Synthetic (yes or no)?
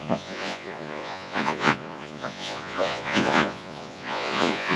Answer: yes